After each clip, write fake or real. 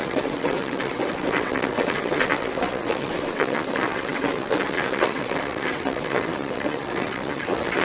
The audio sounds fake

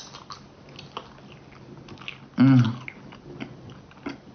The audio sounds real